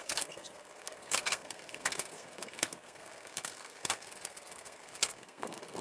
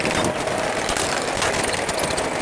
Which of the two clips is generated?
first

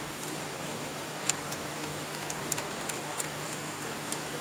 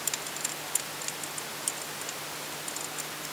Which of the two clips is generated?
first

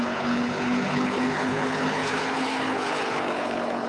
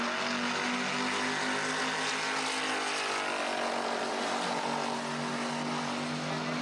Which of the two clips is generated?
first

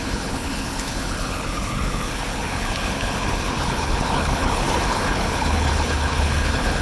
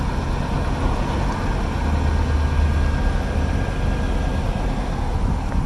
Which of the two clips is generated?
first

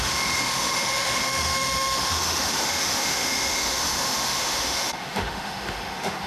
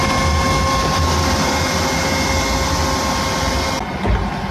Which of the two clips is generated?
first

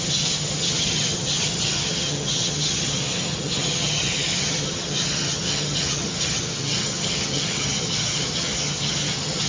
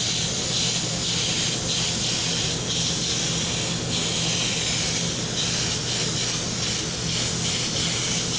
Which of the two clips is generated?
first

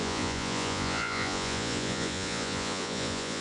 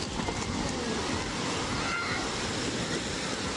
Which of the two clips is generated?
first